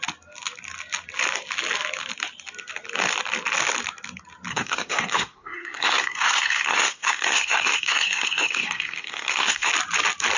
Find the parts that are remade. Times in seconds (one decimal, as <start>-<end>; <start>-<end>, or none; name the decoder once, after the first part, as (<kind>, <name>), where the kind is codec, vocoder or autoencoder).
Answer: 4.5-9.7 (codec, SNAC)